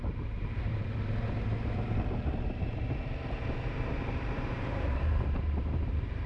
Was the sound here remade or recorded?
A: remade